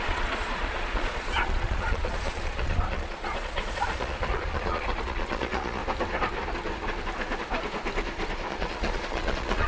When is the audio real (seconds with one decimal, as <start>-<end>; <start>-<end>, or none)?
5.8-8.5